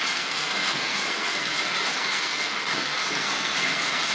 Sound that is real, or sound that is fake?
fake